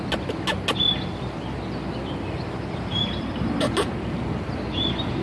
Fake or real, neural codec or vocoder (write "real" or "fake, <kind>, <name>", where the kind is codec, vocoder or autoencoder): real